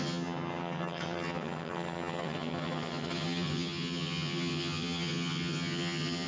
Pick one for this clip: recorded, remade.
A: remade